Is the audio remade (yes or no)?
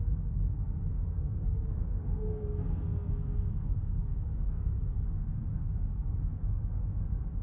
yes